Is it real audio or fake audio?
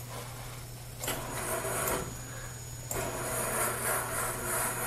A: real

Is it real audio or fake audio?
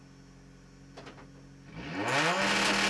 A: real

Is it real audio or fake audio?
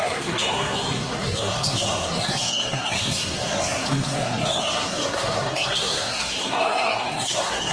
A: fake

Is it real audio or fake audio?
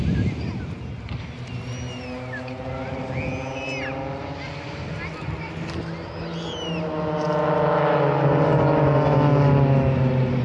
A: real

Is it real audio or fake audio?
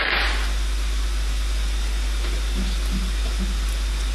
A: real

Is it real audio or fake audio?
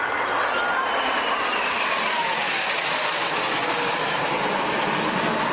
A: real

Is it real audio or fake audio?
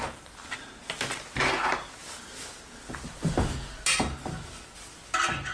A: real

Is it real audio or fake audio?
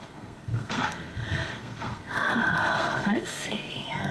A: fake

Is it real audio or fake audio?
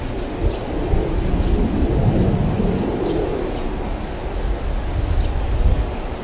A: real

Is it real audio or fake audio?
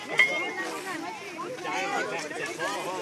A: real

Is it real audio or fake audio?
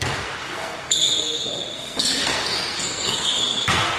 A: fake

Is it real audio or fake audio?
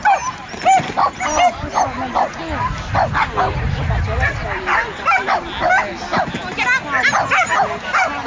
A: real